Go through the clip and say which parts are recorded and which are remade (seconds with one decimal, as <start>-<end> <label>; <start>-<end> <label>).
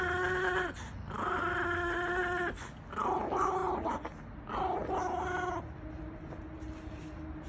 0.0-7.5 recorded